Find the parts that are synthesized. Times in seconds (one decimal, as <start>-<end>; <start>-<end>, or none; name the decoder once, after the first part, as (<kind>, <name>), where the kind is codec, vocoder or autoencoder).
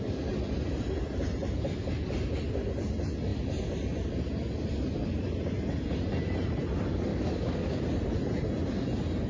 7.1-7.8 (codec, DAC)